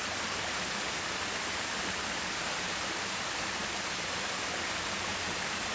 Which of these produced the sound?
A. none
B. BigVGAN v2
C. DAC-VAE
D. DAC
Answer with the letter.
A